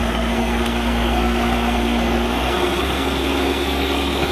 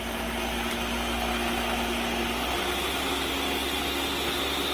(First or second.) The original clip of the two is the second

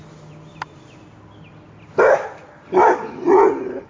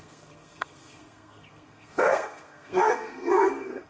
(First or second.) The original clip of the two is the first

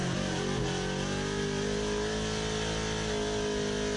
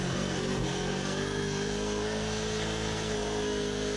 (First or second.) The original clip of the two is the first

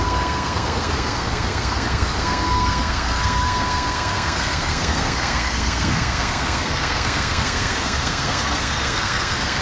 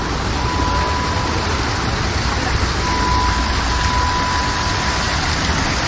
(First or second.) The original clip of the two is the second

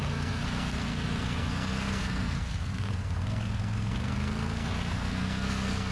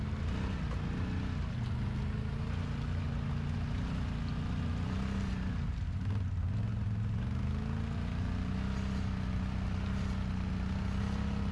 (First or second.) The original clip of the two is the second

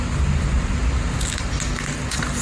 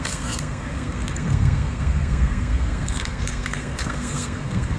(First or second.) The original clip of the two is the first